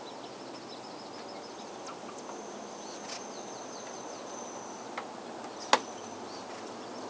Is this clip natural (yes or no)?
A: yes